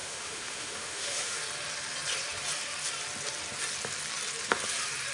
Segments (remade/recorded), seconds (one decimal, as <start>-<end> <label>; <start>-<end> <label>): 0.0-1.4 remade; 1.4-5.1 recorded